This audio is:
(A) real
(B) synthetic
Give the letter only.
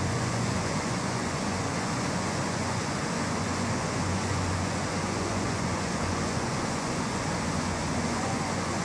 B